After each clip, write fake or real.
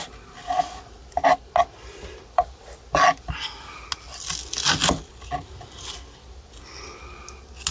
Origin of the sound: real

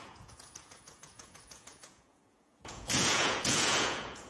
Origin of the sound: fake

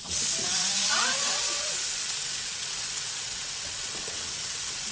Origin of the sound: fake